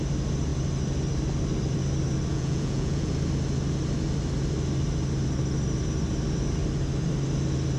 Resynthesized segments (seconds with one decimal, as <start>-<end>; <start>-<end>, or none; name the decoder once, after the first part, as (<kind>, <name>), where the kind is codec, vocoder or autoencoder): 2.3-3.1 (vocoder, Vocos)